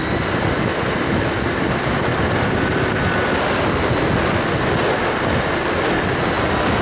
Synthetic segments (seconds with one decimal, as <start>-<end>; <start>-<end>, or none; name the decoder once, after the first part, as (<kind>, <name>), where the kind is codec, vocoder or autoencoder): 2.1-2.6 (vocoder, BigVGAN v2)